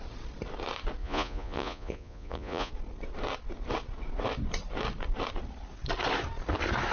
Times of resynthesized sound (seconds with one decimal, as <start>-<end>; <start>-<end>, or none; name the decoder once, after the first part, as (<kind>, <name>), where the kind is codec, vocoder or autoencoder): 1.0-2.7 (vocoder, Vocos)